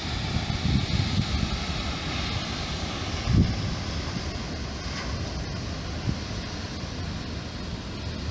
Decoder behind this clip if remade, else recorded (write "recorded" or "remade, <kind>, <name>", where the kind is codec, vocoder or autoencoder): recorded